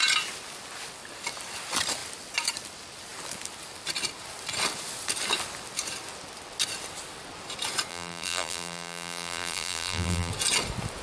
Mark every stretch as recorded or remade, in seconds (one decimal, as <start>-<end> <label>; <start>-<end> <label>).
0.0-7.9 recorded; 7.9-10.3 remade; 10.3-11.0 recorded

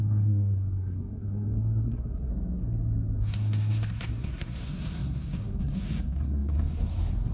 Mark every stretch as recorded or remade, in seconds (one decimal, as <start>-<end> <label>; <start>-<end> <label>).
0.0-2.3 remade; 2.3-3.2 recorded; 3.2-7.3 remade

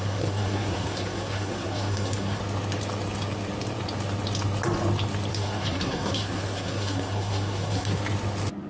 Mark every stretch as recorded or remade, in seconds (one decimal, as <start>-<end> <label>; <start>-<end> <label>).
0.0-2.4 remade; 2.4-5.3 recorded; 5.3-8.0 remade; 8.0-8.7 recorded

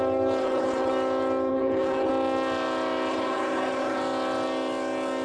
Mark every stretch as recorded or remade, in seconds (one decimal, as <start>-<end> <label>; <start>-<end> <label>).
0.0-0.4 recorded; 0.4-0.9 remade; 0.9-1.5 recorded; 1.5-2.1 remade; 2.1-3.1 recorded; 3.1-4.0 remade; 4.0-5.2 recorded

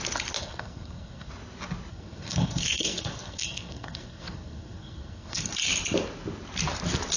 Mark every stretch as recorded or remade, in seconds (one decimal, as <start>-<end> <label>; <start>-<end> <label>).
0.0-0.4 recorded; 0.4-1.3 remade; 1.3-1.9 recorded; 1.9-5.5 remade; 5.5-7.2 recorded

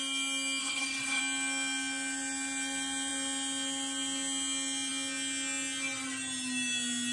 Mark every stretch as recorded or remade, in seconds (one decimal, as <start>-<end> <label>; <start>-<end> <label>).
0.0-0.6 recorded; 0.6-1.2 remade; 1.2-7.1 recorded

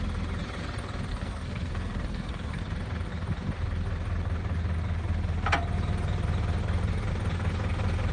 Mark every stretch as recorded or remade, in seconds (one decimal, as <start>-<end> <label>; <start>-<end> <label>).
0.0-1.1 recorded; 1.1-2.6 remade; 2.6-8.1 recorded

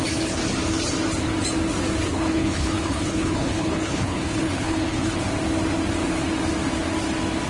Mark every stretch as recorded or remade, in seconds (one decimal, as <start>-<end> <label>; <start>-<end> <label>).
0.0-2.1 recorded; 2.1-5.2 remade; 5.2-7.5 recorded